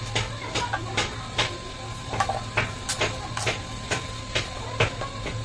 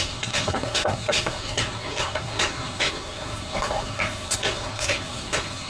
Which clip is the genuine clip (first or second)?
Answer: first